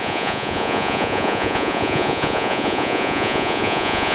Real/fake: fake